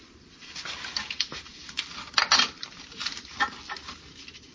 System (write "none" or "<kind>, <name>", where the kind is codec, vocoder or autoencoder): vocoder, BigVGAN v2